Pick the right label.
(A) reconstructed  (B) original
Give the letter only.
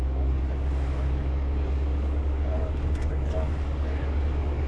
A